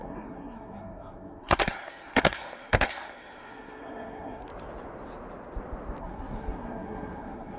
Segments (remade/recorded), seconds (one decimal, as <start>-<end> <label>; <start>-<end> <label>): 0.0-4.5 remade; 4.5-6.0 recorded; 6.0-7.6 remade